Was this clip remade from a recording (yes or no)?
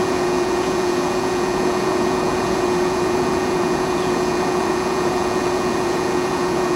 yes